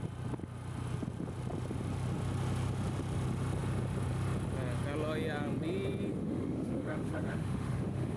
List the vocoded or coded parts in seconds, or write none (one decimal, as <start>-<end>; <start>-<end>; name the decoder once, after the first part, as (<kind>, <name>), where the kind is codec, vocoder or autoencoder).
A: 6.2-8.2 (autoencoder, DAC-VAE)

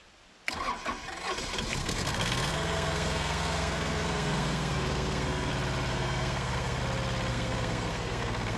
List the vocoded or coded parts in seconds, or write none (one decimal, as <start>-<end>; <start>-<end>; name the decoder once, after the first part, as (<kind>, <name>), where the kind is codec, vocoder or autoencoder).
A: 1.8-5.5 (codec, SNAC); 5.9-6.8; 7.3-8.6

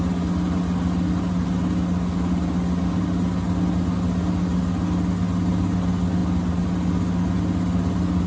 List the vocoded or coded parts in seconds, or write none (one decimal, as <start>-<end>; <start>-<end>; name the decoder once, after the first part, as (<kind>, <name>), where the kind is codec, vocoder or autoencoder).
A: none

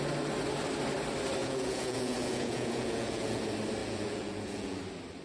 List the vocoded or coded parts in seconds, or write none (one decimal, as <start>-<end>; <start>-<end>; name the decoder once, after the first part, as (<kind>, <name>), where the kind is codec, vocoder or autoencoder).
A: 1.4-3.4 (vocoder, Vocos); 3.8-4.8

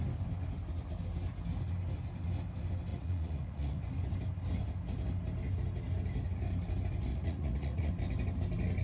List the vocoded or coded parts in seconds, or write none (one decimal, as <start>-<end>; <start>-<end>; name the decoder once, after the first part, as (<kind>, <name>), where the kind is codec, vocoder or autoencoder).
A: 2.9-3.8 (vocoder, Vocos); 7.1-7.9